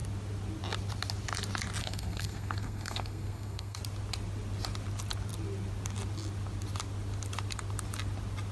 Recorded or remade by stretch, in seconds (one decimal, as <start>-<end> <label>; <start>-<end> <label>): 0.0-1.8 recorded; 1.8-3.8 remade; 3.8-8.5 recorded